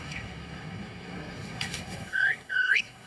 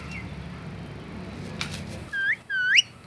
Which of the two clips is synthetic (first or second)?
first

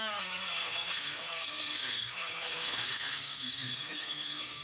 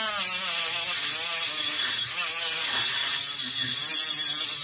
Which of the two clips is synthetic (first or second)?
first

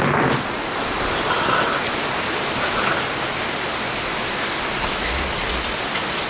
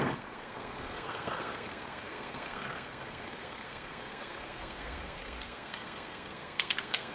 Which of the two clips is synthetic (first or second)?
second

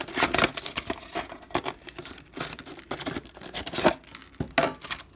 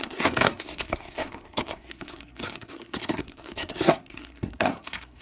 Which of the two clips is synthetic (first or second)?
second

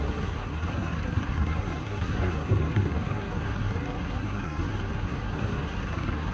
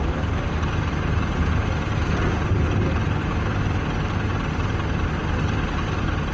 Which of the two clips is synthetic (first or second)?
first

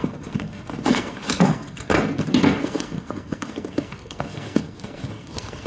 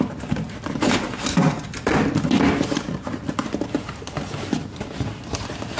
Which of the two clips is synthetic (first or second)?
first